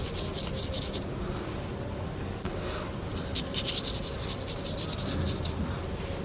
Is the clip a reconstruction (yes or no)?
no